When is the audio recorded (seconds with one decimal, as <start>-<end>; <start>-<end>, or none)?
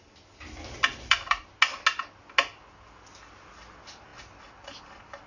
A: 0.0-0.9; 1.5-5.3